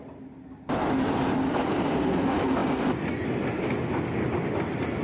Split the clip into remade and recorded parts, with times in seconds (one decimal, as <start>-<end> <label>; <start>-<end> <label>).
0.0-5.0 recorded